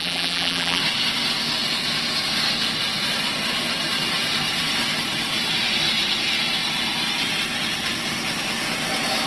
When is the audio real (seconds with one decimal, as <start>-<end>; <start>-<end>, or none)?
0.8-9.3

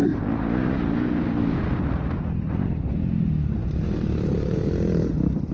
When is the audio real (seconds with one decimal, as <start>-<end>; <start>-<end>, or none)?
0.0-1.6